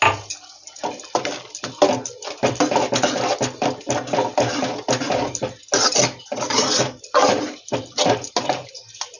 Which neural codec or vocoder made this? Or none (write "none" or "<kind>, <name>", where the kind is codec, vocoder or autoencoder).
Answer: none